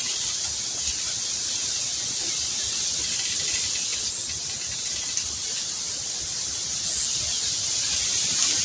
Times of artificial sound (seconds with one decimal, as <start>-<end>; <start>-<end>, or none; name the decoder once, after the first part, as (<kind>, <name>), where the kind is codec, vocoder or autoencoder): none